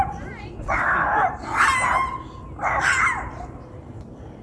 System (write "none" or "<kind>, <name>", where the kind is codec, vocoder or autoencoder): none